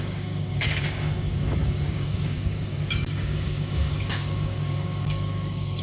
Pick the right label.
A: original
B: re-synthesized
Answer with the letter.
B